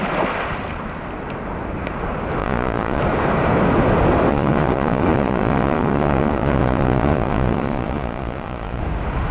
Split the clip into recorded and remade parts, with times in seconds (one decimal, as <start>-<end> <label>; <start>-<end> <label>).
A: 0.0-2.4 recorded; 2.4-3.0 remade; 3.0-4.3 recorded; 4.3-8.8 remade; 8.8-9.3 recorded